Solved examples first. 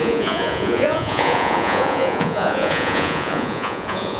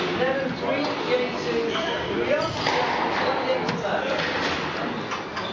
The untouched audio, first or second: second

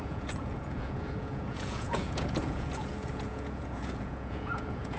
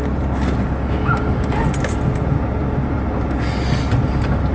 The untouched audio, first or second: second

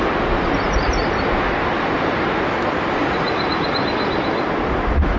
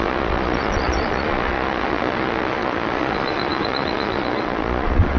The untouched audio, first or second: first